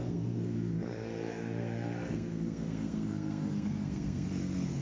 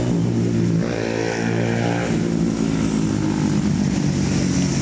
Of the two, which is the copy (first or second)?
first